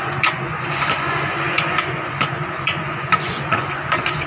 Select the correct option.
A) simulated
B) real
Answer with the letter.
A